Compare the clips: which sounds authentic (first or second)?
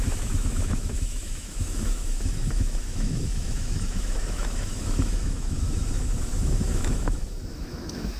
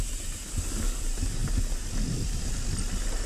second